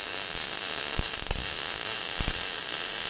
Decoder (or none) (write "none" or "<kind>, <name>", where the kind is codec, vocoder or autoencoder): none